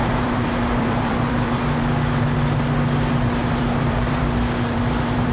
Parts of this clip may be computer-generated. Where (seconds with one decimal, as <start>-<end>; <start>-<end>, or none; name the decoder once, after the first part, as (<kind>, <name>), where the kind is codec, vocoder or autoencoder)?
0.0-1.8 (vocoder, BigVGAN v2); 3.4-5.3